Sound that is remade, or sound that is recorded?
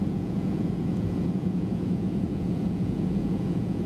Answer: remade